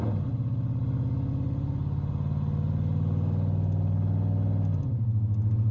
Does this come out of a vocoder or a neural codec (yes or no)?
no